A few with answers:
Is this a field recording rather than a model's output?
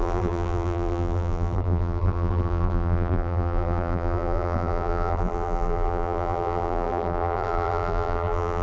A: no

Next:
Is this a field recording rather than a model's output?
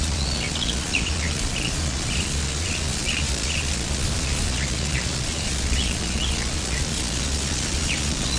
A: no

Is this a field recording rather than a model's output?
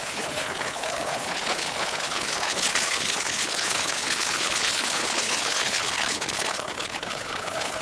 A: no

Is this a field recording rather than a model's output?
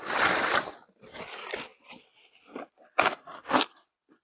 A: yes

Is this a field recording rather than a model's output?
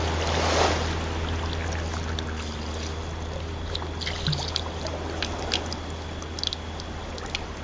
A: yes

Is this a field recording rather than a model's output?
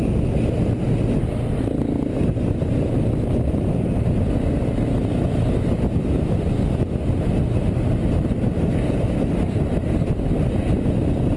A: yes